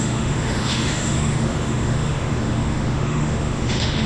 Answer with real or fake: fake